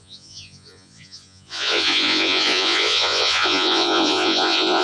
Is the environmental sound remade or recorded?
remade